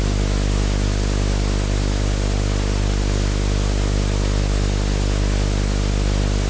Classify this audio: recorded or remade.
recorded